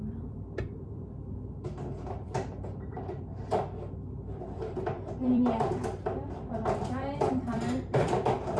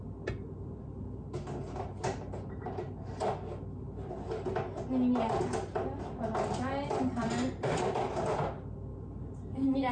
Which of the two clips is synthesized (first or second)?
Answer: first